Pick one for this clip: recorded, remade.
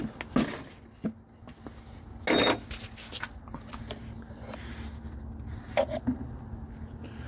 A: recorded